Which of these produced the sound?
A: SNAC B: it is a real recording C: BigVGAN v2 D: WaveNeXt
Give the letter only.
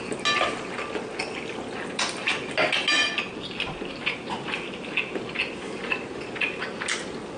B